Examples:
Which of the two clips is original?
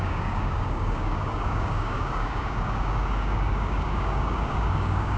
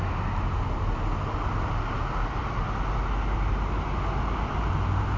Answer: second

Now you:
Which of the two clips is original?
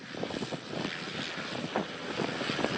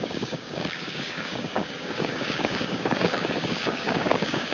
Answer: first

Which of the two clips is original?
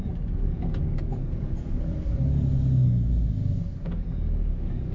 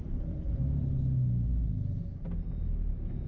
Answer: second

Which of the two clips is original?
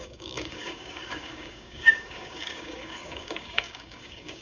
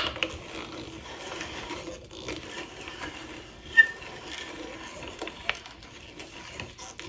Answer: second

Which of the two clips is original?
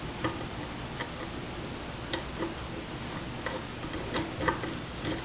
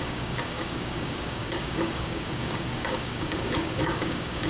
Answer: first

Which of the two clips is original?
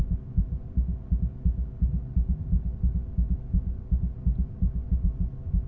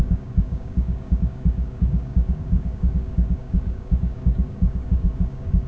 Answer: first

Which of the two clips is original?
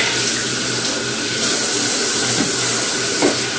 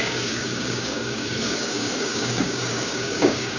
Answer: first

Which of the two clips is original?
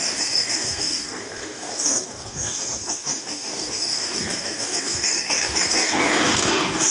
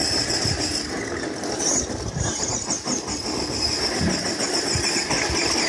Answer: second